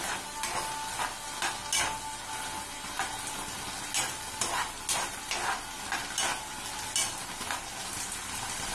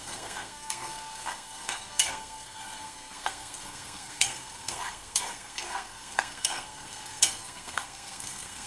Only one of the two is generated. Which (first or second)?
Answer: second